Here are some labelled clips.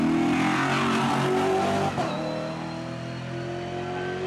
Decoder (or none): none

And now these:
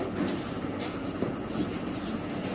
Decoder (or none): none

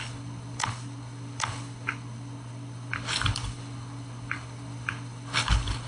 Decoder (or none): codec, HILCodec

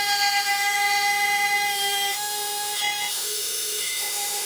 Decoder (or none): autoencoder, DAC-VAE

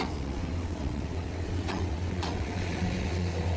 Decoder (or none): vocoder, WaveNeXt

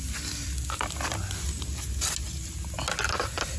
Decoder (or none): none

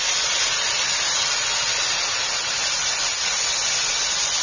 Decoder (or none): none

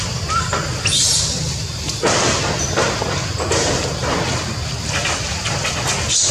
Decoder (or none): none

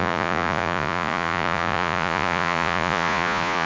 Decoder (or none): vocoder, Vocos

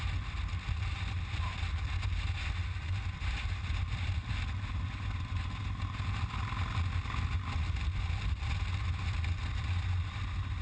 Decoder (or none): none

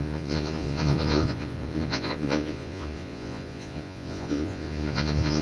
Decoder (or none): vocoder, Vocos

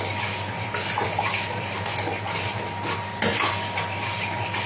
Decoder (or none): none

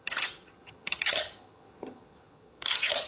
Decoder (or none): vocoder, HiFi-GAN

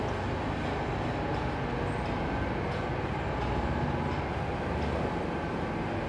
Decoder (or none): none